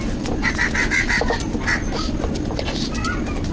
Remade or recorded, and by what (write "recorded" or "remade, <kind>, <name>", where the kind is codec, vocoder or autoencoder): recorded